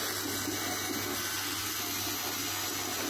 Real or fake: real